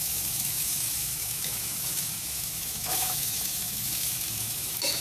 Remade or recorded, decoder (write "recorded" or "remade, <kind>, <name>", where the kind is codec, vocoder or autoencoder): remade, autoencoder, DAC-VAE